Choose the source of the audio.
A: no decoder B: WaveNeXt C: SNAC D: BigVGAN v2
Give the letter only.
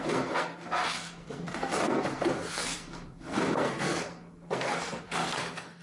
C